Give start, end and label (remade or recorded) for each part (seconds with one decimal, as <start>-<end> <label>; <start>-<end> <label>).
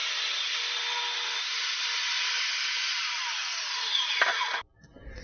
0.0-5.2 recorded